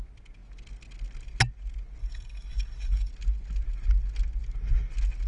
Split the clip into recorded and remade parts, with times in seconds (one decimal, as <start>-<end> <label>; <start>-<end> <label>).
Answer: 0.0-2.0 recorded; 2.0-3.1 remade; 3.1-5.3 recorded